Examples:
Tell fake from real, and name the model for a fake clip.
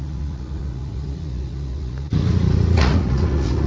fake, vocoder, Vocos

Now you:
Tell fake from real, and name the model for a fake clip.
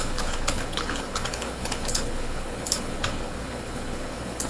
fake, codec, HILCodec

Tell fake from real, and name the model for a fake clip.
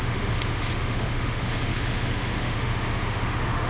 fake, autoencoder, DAC-VAE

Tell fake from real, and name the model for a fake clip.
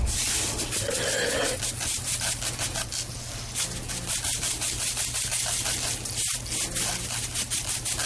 real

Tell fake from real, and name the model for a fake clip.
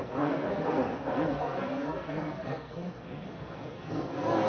fake, codec, SNAC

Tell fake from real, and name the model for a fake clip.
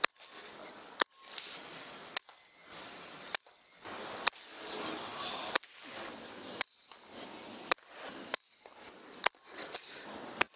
real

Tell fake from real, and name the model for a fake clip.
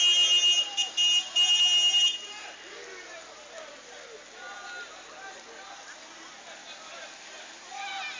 real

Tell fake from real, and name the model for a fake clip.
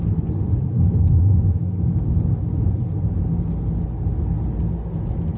real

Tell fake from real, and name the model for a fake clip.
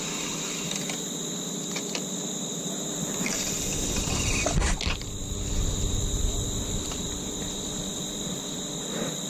real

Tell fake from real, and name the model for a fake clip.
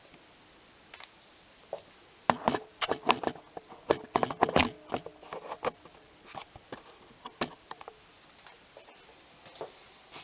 real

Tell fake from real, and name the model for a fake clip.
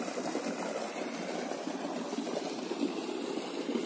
real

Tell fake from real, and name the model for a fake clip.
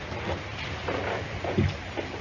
real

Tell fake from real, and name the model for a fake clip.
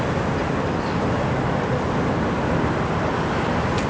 real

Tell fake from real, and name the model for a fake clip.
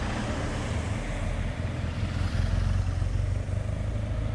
real